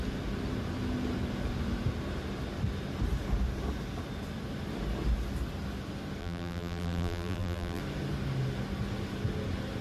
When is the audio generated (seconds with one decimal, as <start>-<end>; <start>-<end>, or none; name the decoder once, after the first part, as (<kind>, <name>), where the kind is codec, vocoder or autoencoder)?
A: 6.2-7.8 (vocoder, BigVGAN v2)